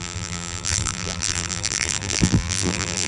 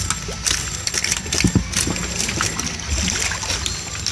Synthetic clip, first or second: first